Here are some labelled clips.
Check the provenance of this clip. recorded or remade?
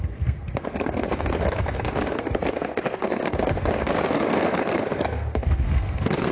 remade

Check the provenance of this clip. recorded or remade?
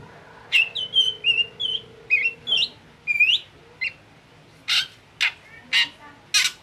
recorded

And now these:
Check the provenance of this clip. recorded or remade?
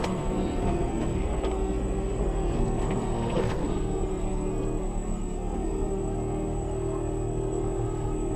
remade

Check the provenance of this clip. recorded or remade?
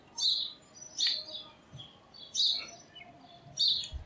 recorded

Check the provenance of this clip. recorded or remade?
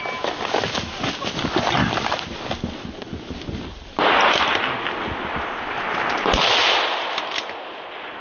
recorded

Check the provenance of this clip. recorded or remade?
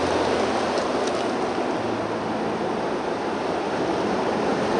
recorded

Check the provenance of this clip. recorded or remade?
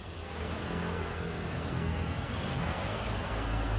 remade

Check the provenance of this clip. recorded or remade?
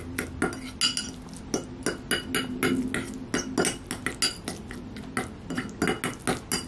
recorded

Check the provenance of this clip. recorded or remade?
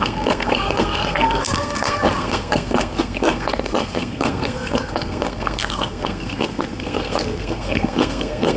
remade